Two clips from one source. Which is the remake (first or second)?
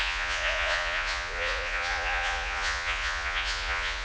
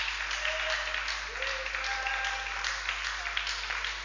first